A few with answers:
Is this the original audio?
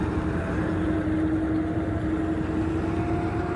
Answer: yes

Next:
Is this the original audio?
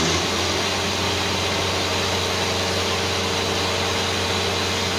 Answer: yes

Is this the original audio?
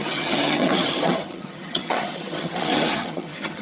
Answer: no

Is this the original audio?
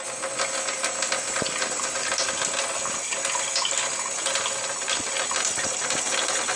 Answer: yes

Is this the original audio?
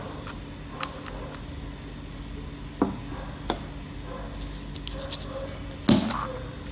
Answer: yes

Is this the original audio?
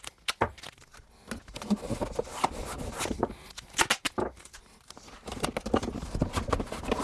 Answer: yes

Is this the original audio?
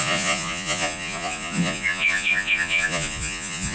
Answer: no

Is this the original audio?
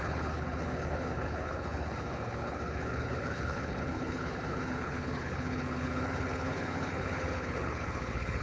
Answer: no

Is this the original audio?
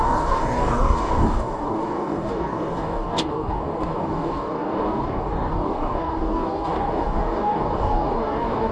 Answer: no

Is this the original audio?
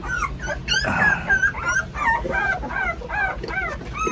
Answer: yes